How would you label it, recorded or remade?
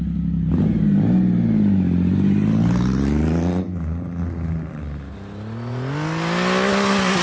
recorded